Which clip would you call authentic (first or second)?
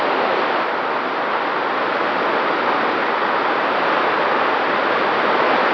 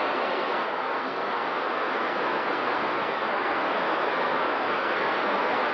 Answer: first